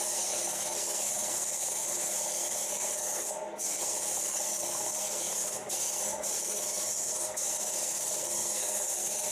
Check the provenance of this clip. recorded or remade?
remade